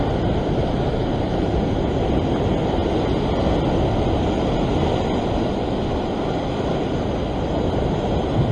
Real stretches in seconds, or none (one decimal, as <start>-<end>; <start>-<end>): 0.0-1.0; 1.5-8.5